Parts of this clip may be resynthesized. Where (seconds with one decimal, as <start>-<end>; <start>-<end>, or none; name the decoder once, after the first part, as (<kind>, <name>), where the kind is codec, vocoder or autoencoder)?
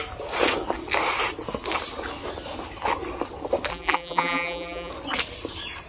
3.7-4.9 (vocoder, BigVGAN v2)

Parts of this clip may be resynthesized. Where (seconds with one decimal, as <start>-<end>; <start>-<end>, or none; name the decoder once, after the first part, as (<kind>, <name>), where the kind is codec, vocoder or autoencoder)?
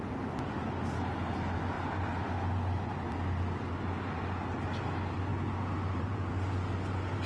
5.3-6.3 (vocoder, BigVGAN v2)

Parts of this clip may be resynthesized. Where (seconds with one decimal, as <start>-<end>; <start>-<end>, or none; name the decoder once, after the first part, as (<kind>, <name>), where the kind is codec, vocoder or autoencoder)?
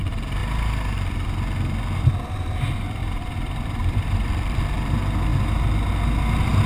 3.0-4.6 (vocoder, BigVGAN v2)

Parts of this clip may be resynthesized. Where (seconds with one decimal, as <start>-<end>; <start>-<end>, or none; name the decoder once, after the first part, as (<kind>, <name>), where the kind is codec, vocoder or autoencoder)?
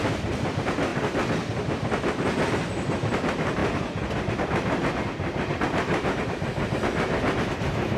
0.0-0.9 (vocoder, BigVGAN v2); 2.7-8.0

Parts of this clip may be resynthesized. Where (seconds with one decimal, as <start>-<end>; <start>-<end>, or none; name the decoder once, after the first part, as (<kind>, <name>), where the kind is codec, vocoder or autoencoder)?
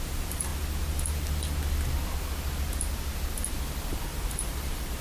0.0-0.5 (vocoder, BigVGAN v2); 3.5-5.0